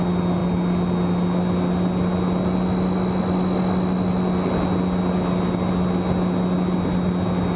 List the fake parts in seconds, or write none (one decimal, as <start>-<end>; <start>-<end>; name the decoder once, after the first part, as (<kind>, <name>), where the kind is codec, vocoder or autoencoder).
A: none